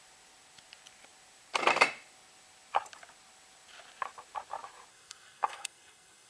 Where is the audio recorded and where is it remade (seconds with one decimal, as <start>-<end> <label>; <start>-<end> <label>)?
0.0-4.9 recorded; 4.9-6.3 remade